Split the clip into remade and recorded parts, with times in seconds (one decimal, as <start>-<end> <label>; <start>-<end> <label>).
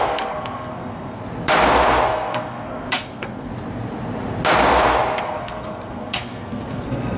0.0-1.2 remade; 1.2-2.1 recorded; 2.1-3.5 remade; 3.5-5.2 recorded; 5.2-7.2 remade